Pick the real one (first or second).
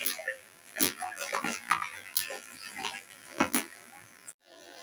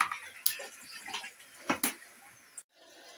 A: second